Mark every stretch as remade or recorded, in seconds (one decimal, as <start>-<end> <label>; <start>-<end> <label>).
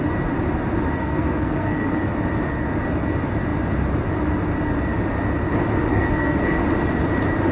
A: 0.0-1.0 recorded; 1.0-2.0 remade; 2.0-5.9 recorded; 5.9-6.6 remade; 6.6-7.5 recorded